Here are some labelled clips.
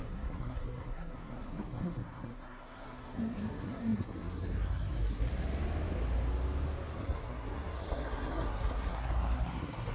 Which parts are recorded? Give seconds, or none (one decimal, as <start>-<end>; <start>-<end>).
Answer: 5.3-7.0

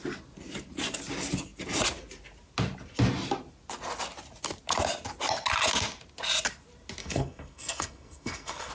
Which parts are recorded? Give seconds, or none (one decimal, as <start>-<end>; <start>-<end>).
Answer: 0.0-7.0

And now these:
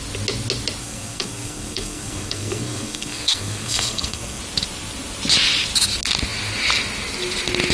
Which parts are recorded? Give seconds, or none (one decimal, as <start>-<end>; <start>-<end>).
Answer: 0.0-0.8; 4.4-7.7

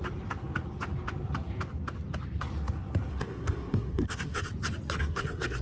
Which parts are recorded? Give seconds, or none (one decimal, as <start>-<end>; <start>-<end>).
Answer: 0.0-3.1; 4.5-5.0